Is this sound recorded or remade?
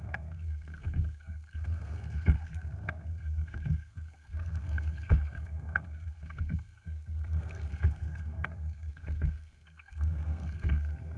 remade